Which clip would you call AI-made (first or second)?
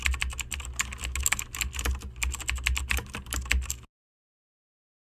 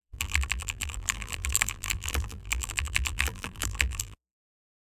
second